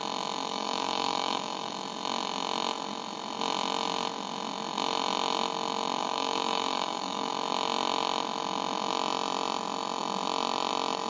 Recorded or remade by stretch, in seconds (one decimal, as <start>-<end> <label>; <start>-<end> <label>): 0.0-0.5 recorded; 0.5-1.7 remade; 1.7-6.0 recorded; 6.0-7.3 remade; 7.3-11.1 recorded